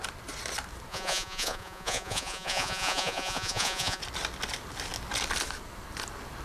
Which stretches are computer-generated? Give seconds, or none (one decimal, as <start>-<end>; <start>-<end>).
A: 0.9-4.0